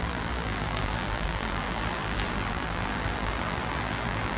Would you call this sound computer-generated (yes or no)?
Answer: yes